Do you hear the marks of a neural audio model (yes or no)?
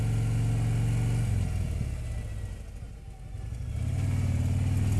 no